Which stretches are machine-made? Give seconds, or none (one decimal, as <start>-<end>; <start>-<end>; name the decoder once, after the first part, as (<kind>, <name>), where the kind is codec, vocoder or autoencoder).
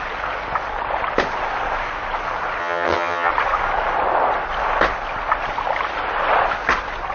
2.6-3.3 (vocoder, HiFi-GAN)